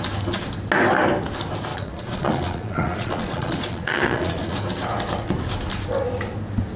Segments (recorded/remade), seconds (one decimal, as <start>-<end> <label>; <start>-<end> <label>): 0.0-1.7 recorded; 1.7-4.6 remade; 4.6-6.8 recorded